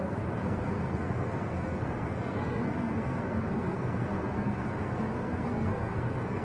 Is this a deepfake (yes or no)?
yes